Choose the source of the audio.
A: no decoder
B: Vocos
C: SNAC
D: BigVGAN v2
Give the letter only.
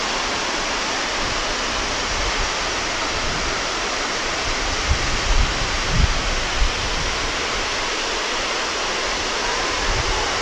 A